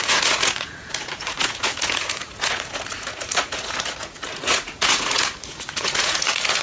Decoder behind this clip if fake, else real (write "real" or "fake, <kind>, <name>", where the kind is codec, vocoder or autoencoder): fake, vocoder, Vocos